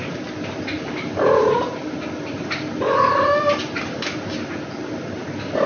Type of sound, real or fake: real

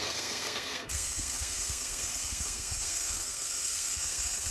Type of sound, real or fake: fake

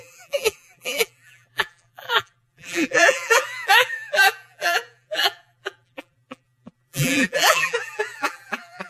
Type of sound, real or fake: fake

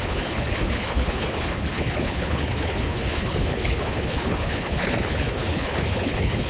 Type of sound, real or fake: fake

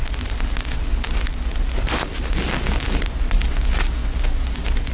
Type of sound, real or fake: real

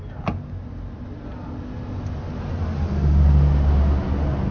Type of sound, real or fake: real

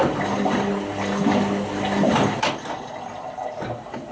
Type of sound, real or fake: real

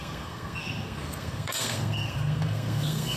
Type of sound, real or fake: fake